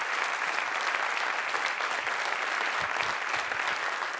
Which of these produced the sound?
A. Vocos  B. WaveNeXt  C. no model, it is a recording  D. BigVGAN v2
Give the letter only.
C